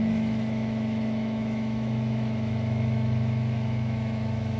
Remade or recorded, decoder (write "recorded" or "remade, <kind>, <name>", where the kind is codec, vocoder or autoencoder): remade, autoencoder, DAC-VAE